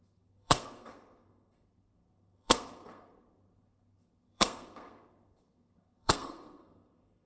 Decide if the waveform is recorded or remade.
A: remade